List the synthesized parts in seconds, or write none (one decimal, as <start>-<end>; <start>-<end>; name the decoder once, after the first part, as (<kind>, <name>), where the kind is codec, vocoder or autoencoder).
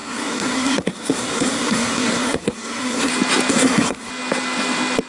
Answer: 0.0-3.1 (codec, SNAC); 3.5-4.1